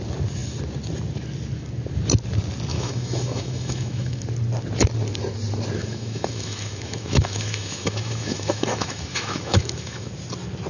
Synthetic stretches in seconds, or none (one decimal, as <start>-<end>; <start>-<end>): 2.7-4.2; 5.8-10.1